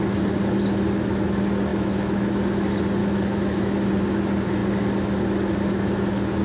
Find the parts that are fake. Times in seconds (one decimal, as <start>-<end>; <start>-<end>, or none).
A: 1.7-2.3; 3.0-3.9